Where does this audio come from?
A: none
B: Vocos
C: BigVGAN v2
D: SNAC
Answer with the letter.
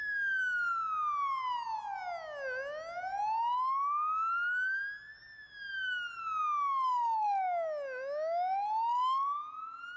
A